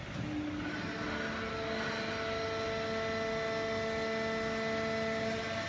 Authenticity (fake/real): real